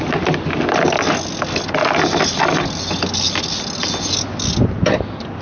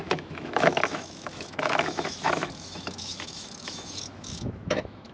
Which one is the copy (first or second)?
second